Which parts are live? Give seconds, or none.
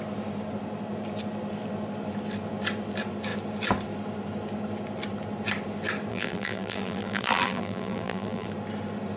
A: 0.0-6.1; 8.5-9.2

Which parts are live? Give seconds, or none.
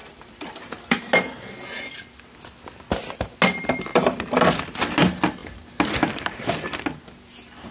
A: 1.0-3.9; 4.5-7.7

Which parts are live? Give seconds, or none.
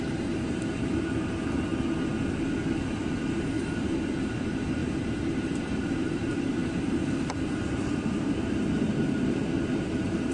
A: 1.7-3.4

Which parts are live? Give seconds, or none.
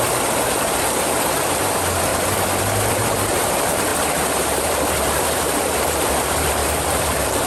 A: 2.1-2.9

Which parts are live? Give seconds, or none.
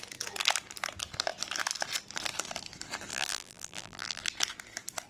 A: 0.0-3.1; 4.2-5.1